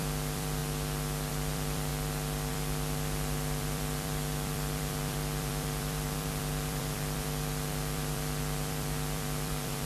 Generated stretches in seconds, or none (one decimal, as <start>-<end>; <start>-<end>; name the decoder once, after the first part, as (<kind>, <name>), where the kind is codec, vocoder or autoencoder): 0.0-0.6 (vocoder, BigVGAN v2); 1.3-1.9; 2.5-9.9